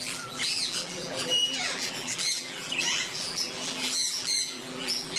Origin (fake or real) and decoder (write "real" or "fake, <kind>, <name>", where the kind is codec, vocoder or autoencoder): fake, vocoder, BigVGAN v2